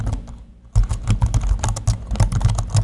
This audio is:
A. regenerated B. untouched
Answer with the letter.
B